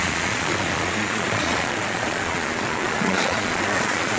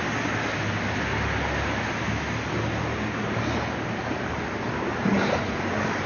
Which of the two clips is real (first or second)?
second